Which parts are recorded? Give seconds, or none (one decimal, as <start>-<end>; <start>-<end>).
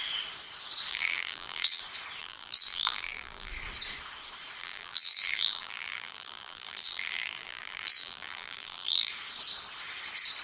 0.0-0.9; 1.8-2.2; 3.5-4.6; 9.1-10.4